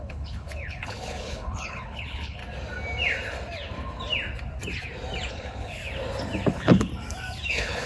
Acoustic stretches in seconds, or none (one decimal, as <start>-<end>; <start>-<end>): 2.4-5.3; 5.8-6.5; 6.9-7.5

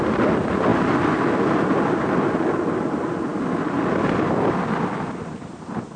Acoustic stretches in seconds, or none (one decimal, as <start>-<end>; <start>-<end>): 0.0-6.0

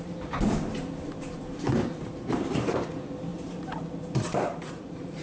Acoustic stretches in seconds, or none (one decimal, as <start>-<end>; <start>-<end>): none

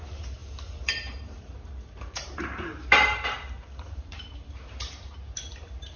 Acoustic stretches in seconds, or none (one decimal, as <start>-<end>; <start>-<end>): none

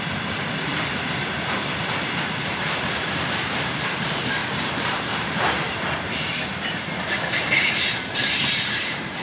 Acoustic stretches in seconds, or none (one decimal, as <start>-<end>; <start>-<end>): 0.7-2.6

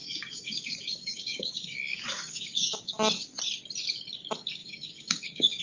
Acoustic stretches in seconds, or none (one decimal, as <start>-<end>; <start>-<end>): 3.4-4.6